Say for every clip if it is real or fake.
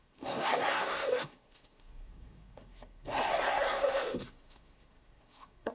fake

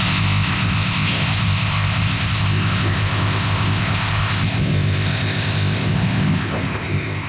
fake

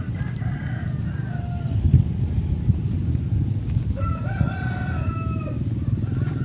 real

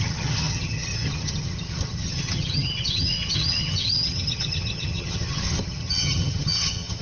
fake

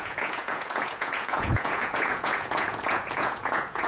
fake